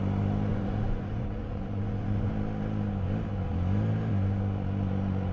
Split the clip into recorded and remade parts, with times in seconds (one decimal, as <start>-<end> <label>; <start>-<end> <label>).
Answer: 0.0-0.5 recorded; 0.5-2.3 remade; 2.3-5.3 recorded

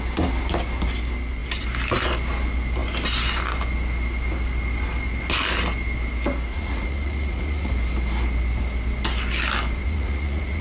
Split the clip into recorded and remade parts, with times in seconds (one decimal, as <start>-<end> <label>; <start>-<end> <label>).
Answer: 0.0-6.5 recorded; 6.5-7.7 remade; 7.7-9.8 recorded; 9.8-10.6 remade

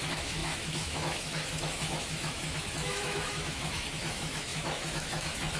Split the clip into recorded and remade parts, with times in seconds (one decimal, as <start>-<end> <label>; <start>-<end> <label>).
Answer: 0.0-5.6 remade

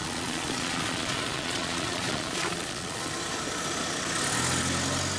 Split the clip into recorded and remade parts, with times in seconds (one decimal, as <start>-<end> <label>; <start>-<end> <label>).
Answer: 0.0-3.1 remade; 3.1-5.2 recorded

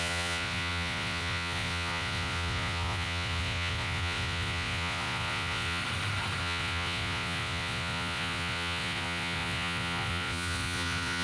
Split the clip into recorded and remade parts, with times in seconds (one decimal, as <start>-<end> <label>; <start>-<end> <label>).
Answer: 0.0-5.8 remade; 5.8-6.4 recorded; 6.4-11.2 remade

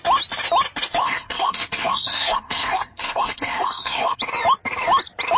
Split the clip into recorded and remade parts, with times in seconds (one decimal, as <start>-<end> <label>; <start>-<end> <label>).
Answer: 0.0-1.0 recorded; 1.0-4.2 remade; 4.2-5.4 recorded